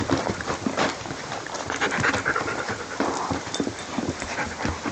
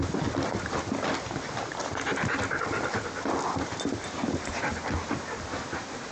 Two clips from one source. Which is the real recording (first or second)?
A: second